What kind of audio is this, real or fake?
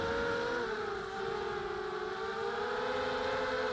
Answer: real